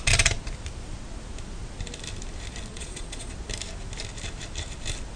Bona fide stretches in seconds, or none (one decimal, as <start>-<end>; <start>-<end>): 0.0-2.7; 3.3-5.2